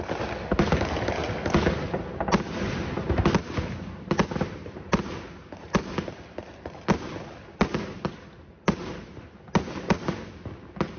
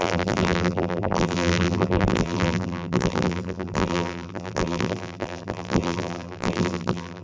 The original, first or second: first